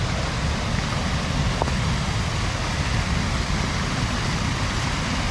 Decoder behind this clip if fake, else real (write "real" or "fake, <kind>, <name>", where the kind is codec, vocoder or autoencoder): real